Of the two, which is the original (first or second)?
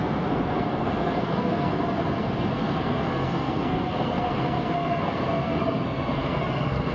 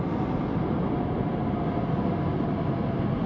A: second